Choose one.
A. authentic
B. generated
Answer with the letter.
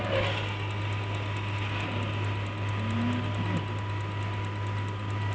A